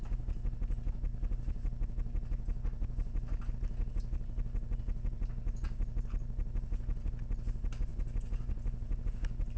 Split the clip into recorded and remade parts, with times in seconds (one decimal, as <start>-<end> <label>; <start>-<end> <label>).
0.0-9.6 recorded